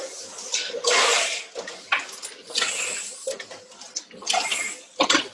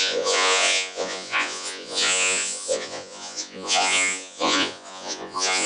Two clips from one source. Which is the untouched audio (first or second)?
first